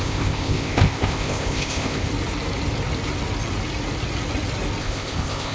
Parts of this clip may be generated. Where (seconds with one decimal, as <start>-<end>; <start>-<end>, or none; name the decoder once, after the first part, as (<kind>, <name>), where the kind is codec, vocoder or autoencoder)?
0.0-2.1 (codec, ZipCodec); 4.8-5.5